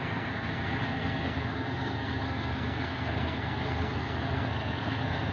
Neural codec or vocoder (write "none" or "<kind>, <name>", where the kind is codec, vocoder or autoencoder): codec, SNAC